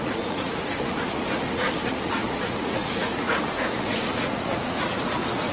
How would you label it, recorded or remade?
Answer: remade